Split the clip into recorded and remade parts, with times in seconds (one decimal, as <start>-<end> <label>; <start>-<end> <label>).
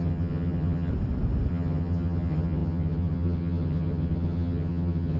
0.0-0.9 remade; 0.9-1.5 recorded; 1.5-5.2 remade